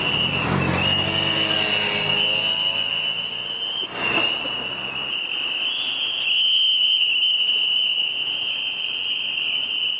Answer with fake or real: real